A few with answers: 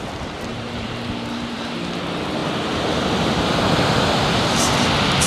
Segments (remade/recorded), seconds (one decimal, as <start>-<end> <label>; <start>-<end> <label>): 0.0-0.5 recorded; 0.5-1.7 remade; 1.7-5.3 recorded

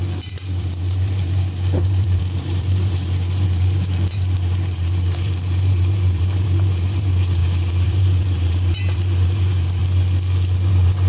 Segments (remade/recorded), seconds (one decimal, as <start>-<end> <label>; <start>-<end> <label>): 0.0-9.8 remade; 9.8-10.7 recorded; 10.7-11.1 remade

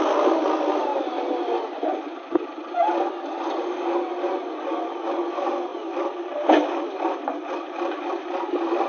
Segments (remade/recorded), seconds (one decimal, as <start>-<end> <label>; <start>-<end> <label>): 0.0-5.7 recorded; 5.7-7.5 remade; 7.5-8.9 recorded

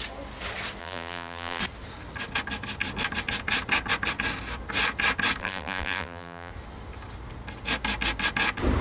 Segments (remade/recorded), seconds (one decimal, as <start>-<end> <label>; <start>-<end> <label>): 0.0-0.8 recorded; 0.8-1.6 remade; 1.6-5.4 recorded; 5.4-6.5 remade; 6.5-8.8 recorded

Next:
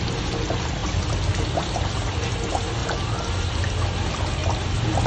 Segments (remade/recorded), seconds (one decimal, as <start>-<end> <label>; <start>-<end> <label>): 0.0-5.1 recorded